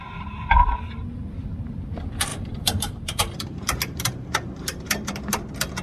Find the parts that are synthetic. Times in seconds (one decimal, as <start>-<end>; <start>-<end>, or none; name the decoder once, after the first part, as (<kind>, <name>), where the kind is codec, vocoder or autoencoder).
2.3-5.2 (vocoder, BigVGAN v2)